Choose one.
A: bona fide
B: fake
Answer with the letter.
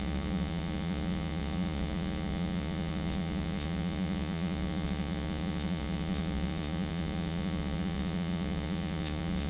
B